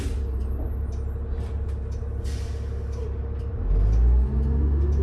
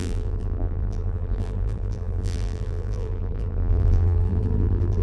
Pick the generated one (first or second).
second